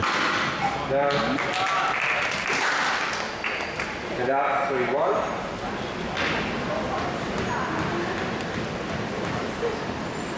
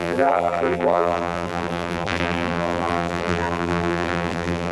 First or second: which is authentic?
first